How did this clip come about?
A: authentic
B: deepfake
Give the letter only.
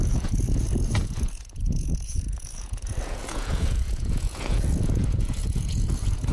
B